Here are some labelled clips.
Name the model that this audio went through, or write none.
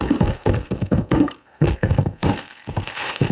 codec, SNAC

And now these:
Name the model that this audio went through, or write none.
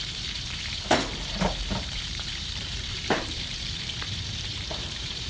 vocoder, BigVGAN v2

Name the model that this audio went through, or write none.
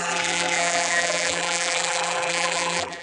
vocoder, BigVGAN v2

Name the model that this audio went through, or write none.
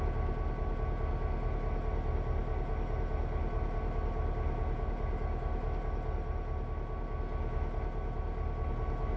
none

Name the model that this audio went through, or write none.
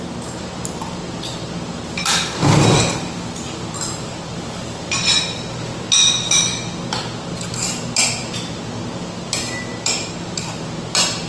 none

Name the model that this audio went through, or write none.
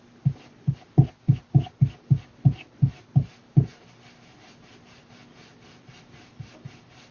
none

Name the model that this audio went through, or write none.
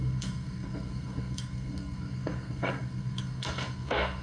codec, SNAC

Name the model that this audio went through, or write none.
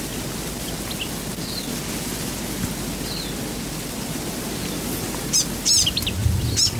none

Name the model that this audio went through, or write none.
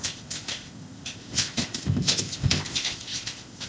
codec, ZipCodec